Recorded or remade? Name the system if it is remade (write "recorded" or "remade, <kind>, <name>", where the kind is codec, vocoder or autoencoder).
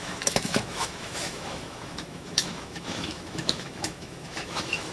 remade, autoencoder, DAC-VAE